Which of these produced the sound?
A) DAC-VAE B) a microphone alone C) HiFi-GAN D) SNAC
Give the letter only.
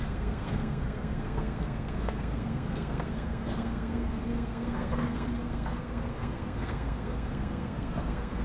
D